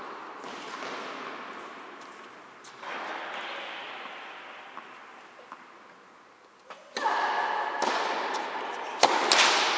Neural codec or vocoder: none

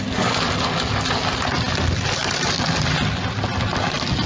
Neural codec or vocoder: none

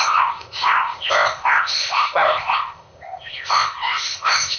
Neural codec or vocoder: codec, ZipCodec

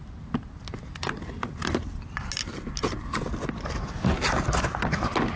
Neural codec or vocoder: none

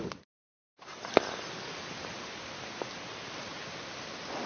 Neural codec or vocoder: none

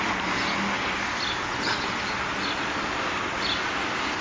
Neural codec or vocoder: none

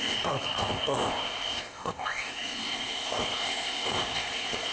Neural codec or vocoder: codec, ZipCodec